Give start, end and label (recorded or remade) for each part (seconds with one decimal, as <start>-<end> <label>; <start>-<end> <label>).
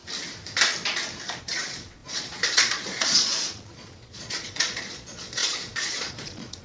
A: 0.0-1.4 recorded; 1.4-6.6 remade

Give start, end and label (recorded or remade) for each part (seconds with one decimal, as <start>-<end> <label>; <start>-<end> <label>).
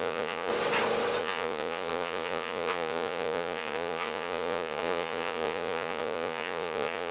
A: 0.0-0.5 remade; 0.5-1.2 recorded; 1.2-7.1 remade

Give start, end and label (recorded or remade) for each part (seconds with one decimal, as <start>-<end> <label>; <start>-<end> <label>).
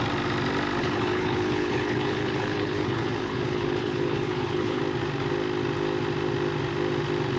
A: 0.0-0.8 recorded; 0.8-4.8 remade; 4.8-7.4 recorded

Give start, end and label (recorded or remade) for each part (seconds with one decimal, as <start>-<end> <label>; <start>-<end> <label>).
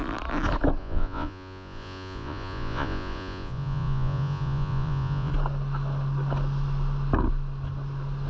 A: 0.0-0.8 recorded; 0.8-5.3 remade; 5.3-8.3 recorded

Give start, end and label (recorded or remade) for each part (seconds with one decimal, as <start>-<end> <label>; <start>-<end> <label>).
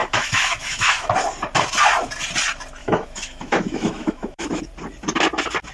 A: 0.0-1.1 remade; 1.1-2.8 recorded; 2.8-4.6 remade; 4.6-5.7 recorded